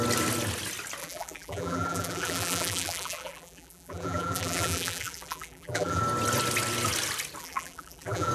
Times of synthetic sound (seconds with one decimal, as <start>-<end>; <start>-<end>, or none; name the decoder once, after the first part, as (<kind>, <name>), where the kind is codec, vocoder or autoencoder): 1.0-6.0 (vocoder, BigVGAN v2); 7.4-8.3

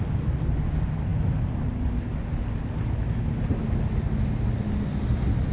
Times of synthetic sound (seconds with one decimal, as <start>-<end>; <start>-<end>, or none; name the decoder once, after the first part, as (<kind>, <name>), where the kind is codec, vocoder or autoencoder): none